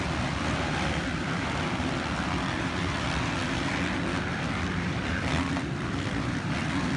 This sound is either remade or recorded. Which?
remade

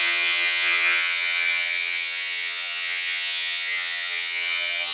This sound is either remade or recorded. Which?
remade